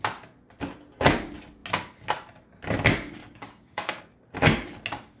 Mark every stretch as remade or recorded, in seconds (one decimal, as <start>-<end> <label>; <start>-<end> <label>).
0.0-3.2 recorded; 3.2-4.0 remade; 4.0-5.2 recorded